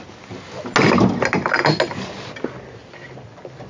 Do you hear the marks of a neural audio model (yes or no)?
no